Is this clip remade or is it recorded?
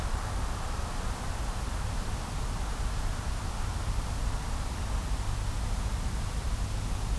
recorded